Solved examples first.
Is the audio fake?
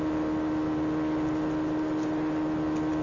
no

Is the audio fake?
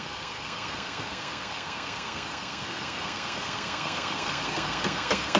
yes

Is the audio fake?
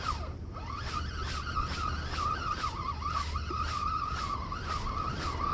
no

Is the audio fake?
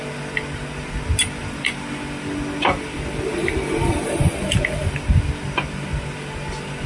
no